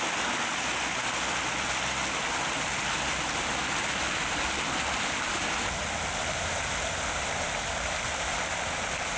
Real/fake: real